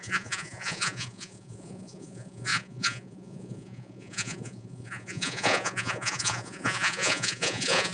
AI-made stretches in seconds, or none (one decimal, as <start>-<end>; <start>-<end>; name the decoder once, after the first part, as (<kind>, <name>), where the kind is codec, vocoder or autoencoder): 0.0-7.9 (vocoder, Vocos)